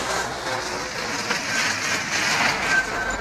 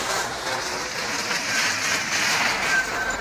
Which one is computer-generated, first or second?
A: second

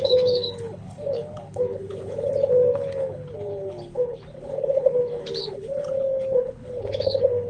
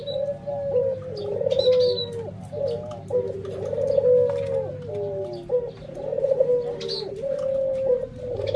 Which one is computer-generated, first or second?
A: first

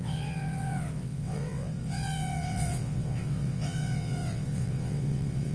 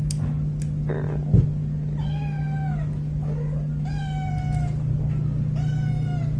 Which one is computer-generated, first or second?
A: first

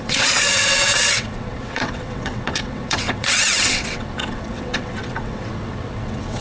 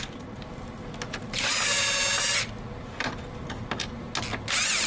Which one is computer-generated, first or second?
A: first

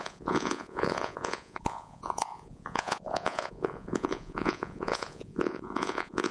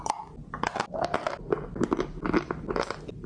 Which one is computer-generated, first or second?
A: first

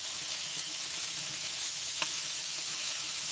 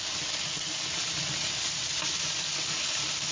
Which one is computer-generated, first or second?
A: first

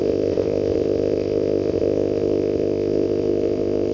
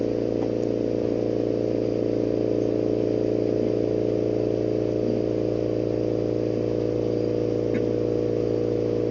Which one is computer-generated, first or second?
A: first